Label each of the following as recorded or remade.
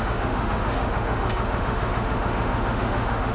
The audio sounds remade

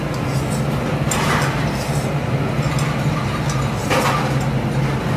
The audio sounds recorded